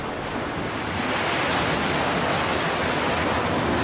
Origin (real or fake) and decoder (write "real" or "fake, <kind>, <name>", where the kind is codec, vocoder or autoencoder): real